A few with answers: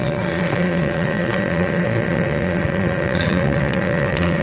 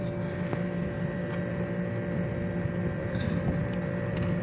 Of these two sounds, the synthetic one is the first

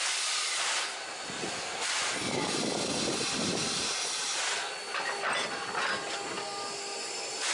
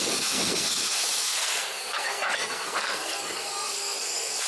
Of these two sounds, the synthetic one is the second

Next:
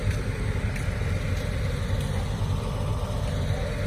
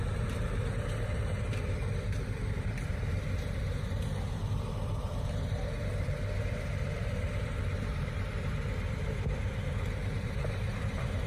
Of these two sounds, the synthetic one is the second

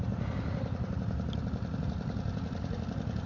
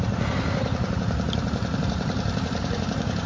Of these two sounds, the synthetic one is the second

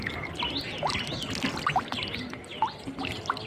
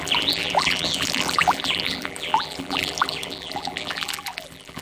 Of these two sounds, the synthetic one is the second